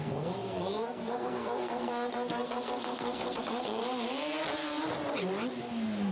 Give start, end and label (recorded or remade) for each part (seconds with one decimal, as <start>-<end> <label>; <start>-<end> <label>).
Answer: 0.0-3.8 remade; 3.8-6.1 recorded